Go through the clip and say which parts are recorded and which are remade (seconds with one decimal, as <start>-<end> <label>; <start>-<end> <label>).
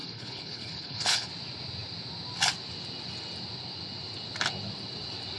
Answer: 0.0-1.3 remade; 1.3-5.4 recorded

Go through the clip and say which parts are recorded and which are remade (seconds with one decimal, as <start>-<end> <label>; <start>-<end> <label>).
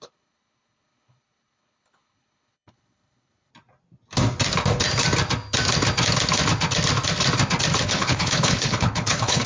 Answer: 0.0-3.5 remade; 3.5-7.8 recorded; 7.8-9.5 remade